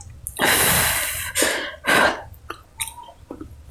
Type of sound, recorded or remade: recorded